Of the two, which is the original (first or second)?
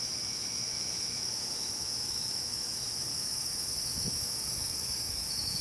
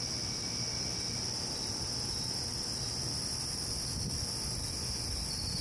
second